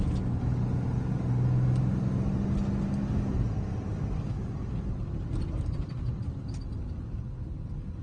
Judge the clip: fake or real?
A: real